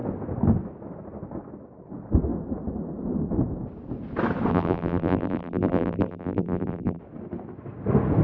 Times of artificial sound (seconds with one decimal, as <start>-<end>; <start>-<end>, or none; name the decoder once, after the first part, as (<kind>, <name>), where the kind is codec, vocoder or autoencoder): 4.5-7.0 (vocoder, BigVGAN v2)